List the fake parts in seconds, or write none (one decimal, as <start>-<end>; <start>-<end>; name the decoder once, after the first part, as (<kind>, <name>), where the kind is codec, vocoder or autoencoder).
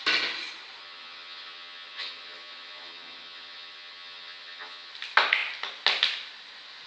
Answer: 0.8-4.9 (vocoder, HiFi-GAN)